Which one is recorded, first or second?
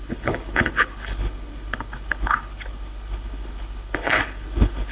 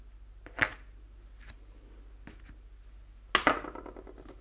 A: second